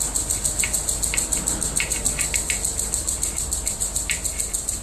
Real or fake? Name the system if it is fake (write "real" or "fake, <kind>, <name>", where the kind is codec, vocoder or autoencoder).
real